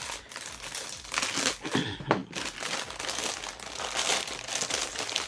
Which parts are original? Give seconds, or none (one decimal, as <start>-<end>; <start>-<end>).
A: 0.0-5.3